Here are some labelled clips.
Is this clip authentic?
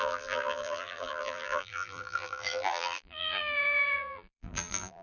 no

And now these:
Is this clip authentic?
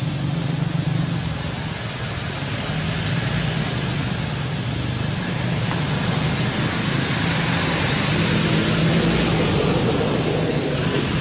yes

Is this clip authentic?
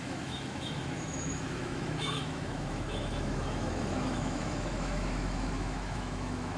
no